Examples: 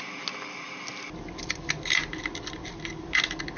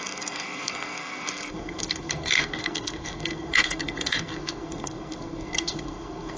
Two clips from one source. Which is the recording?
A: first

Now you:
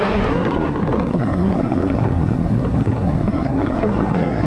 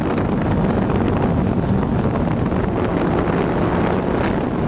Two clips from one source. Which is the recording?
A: second